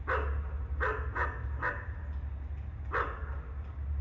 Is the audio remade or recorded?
recorded